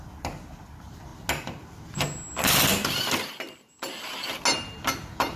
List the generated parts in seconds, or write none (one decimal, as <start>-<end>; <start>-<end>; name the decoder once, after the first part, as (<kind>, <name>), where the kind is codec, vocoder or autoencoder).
none